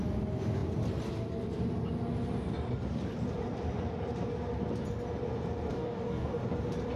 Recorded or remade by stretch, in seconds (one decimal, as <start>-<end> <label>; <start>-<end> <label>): 0.0-5.7 recorded; 5.7-6.4 remade; 6.4-7.0 recorded